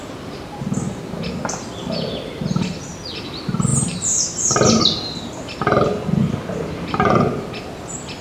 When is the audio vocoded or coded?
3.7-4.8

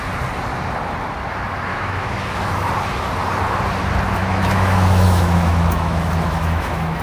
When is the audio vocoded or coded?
1.7-2.7; 4.2-7.0

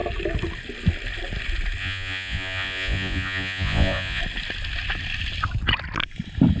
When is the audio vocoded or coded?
1.8-4.2